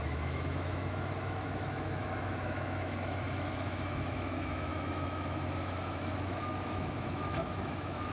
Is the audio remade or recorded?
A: remade